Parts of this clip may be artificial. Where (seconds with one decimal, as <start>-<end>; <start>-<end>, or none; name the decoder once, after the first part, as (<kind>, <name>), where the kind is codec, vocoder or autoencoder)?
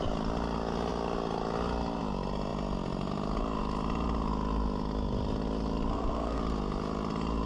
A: 5.9-6.4 (codec, SNAC)